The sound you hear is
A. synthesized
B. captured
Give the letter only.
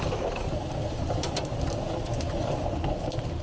B